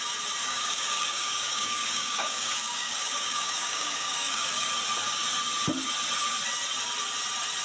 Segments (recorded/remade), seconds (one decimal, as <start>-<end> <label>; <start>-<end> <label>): 0.0-0.4 recorded; 0.4-4.7 remade; 4.7-7.6 recorded